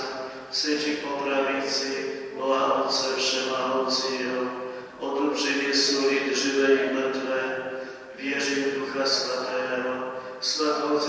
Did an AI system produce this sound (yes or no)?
no